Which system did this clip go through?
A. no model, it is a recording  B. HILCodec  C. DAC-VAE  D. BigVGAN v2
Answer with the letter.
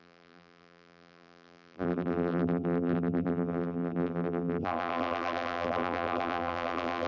D